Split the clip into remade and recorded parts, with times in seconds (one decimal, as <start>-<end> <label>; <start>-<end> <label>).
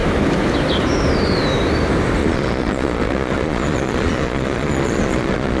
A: 0.0-2.2 recorded; 2.2-5.6 remade